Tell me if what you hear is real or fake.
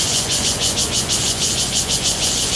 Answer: fake